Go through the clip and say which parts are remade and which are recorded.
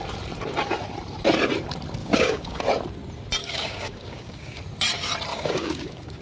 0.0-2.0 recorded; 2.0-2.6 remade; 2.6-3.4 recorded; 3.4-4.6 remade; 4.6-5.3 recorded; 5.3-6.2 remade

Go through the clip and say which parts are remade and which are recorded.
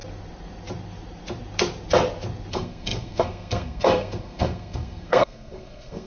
0.0-2.5 recorded; 2.5-6.1 remade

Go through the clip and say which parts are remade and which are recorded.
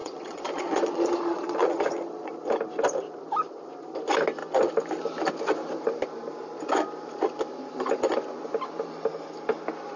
0.0-2.3 remade; 2.3-10.0 recorded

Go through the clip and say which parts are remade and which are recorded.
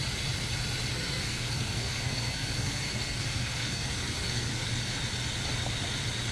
0.0-0.9 recorded; 0.9-4.7 remade; 4.7-6.3 recorded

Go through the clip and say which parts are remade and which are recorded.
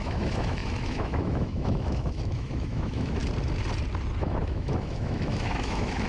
0.0-3.2 remade; 3.2-4.2 recorded; 4.2-6.1 remade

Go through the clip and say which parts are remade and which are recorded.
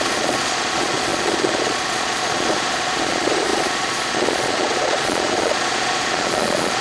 0.0-6.8 remade